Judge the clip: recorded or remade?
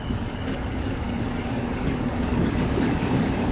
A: remade